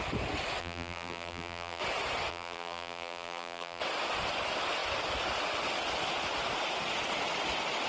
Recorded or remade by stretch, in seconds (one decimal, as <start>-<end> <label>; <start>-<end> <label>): 0.0-0.6 recorded; 0.6-1.8 remade; 1.8-2.3 recorded; 2.3-3.8 remade; 3.8-7.9 recorded